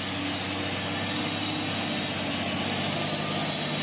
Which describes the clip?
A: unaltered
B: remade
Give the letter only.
A